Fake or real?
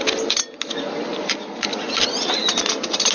real